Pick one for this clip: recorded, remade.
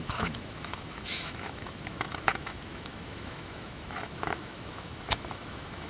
remade